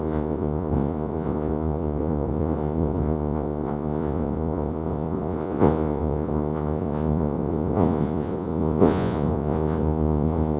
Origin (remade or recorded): remade